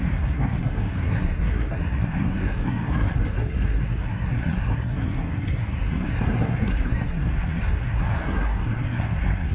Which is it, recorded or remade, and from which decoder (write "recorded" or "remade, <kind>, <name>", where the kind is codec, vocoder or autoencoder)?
remade, codec, SNAC